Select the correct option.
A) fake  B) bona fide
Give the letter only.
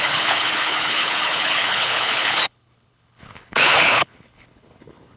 A